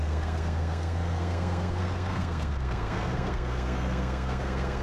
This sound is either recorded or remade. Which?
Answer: remade